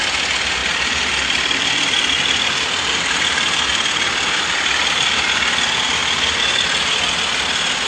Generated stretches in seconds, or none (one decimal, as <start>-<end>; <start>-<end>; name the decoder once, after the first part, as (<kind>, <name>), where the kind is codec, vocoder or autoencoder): 0.6-5.3 (vocoder, BigVGAN v2)